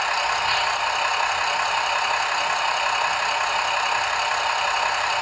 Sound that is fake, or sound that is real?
real